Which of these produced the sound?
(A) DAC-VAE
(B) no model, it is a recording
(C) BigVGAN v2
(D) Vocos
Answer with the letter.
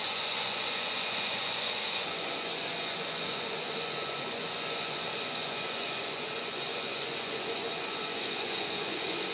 D